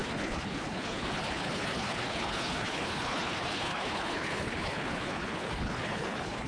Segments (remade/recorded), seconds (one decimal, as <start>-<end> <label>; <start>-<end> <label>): 0.0-6.5 remade